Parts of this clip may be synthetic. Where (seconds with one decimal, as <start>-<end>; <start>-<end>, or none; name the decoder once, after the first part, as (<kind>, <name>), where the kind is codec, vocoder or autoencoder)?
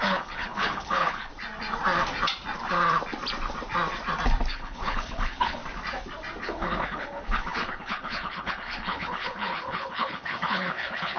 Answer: 0.0-1.3 (codec, HILCodec); 4.5-5.6; 6.4-11.2